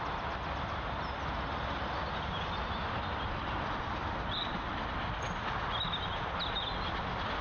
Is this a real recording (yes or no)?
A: yes